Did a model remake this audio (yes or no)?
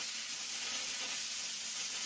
no